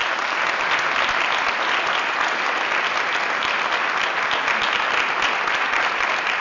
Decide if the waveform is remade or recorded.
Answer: recorded